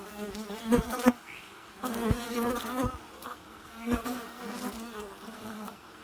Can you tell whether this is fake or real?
fake